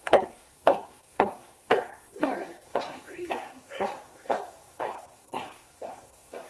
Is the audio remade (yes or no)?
yes